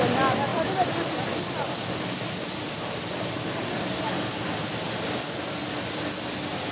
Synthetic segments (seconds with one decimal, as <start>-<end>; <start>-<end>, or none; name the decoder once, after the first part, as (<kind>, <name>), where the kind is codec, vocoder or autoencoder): 0.5-3.9 (vocoder, BigVGAN v2)